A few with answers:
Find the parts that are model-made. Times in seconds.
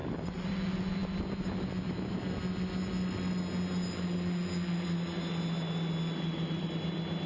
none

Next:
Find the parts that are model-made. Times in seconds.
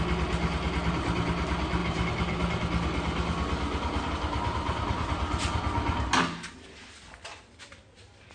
none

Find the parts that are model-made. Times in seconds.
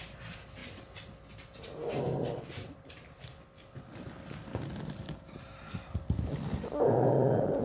none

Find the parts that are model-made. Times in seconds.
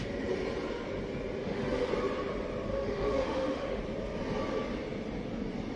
1.4-1.9 (autoencoder, DAC-VAE); 2.7-3.8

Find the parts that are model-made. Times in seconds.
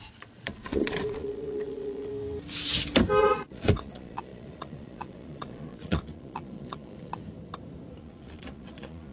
0.0-2.1 (vocoder, Vocos); 3.2-7.2; 8.0-9.1